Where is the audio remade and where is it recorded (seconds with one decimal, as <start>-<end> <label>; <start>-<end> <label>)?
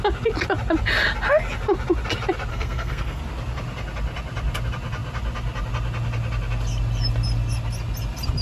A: 0.0-2.5 recorded; 2.5-3.2 remade; 3.2-8.4 recorded